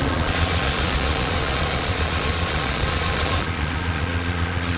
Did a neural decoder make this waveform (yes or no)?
yes